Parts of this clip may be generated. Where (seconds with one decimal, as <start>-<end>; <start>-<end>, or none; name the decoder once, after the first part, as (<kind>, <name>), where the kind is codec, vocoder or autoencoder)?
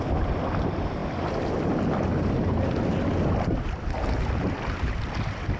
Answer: none